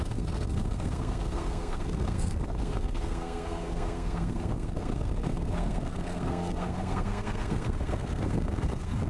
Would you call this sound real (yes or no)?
no